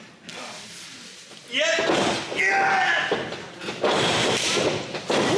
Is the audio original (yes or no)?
yes